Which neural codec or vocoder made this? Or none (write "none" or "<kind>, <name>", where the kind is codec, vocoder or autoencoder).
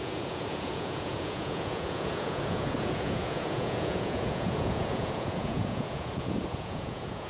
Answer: vocoder, Vocos